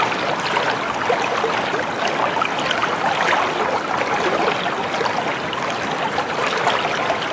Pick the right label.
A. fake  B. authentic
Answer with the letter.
B